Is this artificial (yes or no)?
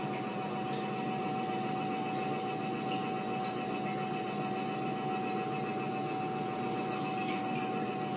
no